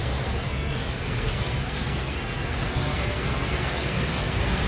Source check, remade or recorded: remade